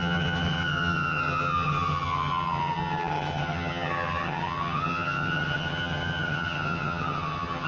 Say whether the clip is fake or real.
fake